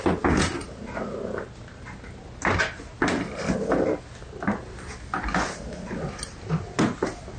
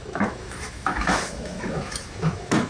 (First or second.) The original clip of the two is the first